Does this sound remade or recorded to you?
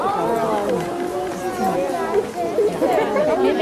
recorded